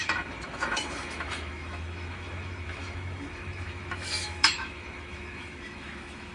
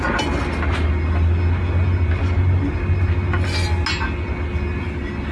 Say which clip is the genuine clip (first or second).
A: second